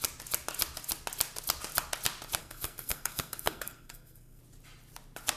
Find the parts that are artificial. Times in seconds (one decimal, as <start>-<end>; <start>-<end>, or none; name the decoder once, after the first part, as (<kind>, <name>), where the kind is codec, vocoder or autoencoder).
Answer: 2.4-4.4 (codec, SNAC)